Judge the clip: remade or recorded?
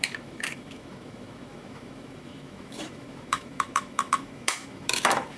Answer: remade